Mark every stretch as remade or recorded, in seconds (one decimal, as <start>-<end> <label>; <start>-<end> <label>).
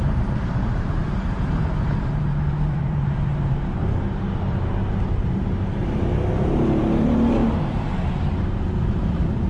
0.0-9.5 remade